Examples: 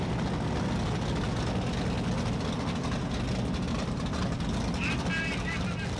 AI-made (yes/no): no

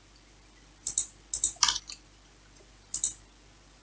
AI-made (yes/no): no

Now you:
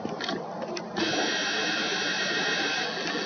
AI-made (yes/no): no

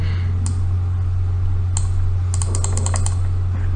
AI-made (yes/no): no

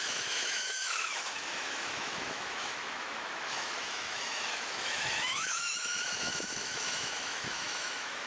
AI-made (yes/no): yes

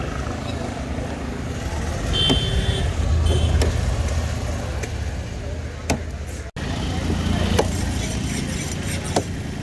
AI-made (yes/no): no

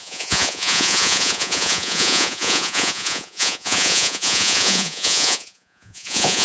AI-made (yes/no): yes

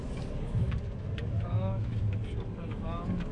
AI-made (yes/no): yes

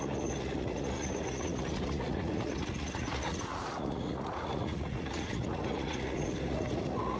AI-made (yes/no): yes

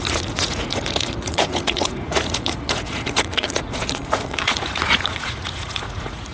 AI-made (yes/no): yes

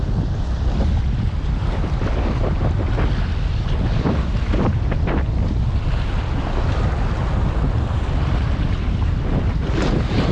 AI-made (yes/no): no